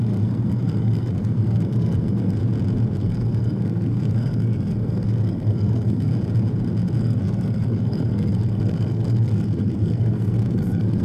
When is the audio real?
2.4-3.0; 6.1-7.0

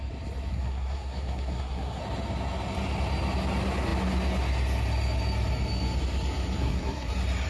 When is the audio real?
0.0-0.5; 2.0-6.6; 7.1-7.5

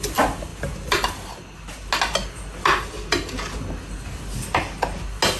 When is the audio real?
0.0-5.4

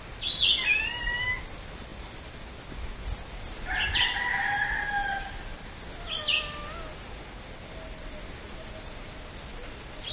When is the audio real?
0.0-10.1

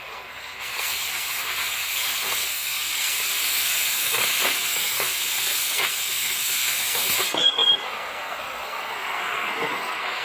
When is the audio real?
none